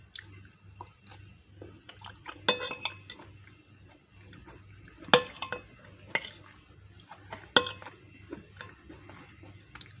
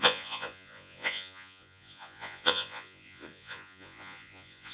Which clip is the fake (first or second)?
second